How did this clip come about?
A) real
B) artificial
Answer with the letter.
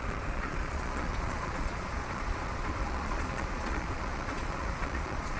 B